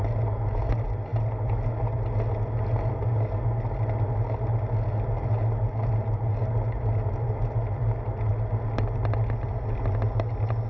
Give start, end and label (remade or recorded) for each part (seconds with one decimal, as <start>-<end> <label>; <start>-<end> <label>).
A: 0.0-10.7 recorded